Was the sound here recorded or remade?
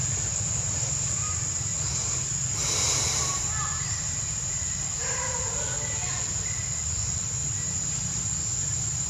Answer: recorded